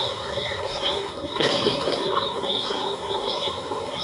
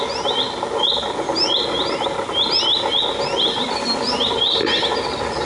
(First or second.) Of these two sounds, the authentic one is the second